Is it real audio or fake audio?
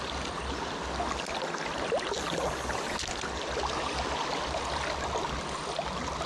real